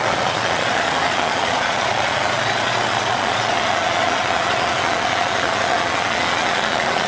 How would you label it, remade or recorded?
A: remade